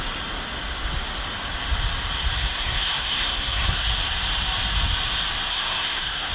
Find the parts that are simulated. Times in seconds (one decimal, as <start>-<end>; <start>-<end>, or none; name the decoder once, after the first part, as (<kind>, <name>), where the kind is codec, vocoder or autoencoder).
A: 2.4-3.9 (codec, SNAC); 5.5-6.3